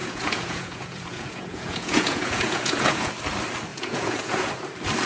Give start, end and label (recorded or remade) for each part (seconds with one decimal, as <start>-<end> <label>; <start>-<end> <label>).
0.0-3.1 remade; 3.1-3.7 recorded; 3.7-4.5 remade; 4.5-5.1 recorded